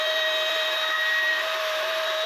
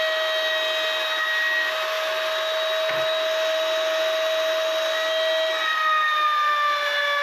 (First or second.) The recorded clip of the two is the second